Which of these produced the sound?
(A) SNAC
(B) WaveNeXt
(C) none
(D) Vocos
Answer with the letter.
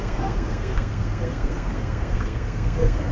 A